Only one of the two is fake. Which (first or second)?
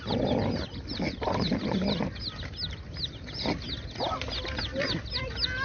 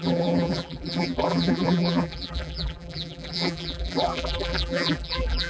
second